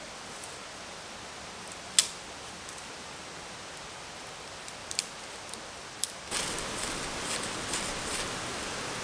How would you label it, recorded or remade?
recorded